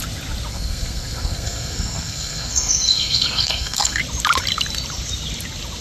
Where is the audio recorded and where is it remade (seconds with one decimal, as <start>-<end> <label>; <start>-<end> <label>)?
0.0-0.5 recorded; 0.5-4.0 remade; 4.0-5.8 recorded